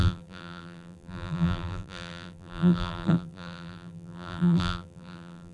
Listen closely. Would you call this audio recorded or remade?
remade